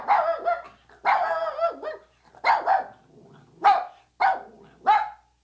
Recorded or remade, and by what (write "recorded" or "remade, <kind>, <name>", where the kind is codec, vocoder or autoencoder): recorded